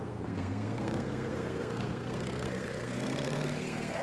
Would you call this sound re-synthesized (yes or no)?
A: yes